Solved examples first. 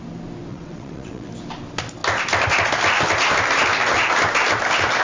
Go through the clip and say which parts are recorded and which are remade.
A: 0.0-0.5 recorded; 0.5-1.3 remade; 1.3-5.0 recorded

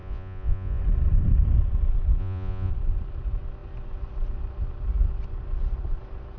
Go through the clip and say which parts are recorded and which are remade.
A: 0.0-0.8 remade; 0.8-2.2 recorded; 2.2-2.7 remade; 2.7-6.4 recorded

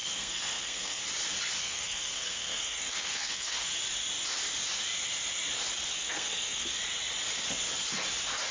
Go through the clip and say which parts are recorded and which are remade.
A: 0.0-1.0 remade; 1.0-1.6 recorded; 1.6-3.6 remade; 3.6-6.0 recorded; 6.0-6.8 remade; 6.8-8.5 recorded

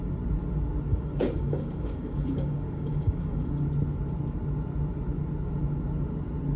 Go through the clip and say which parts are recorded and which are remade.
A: 0.0-0.9 recorded; 0.9-3.5 remade; 3.5-6.6 recorded

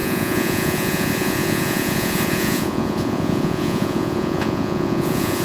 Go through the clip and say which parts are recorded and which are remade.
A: 0.0-5.4 remade